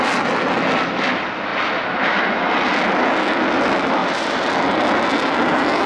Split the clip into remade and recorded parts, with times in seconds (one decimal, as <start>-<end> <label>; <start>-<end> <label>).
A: 0.0-4.0 recorded; 4.0-4.5 remade; 4.5-5.9 recorded